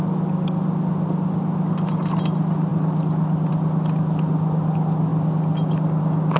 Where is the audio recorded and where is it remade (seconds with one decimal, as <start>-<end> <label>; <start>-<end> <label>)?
0.0-2.7 recorded; 2.7-3.5 remade; 3.5-6.4 recorded